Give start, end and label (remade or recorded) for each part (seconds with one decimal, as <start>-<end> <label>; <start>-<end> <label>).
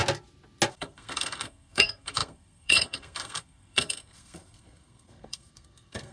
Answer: 0.0-0.7 recorded; 0.7-6.1 remade